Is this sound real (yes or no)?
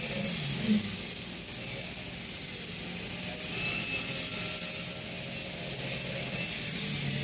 yes